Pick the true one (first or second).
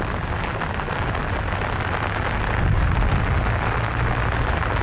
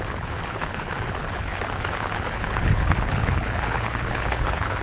first